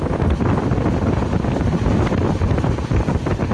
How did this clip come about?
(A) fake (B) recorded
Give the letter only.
B